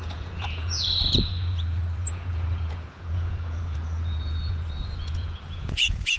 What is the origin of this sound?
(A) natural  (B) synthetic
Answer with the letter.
B